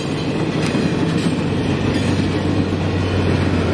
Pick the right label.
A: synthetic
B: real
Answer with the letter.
B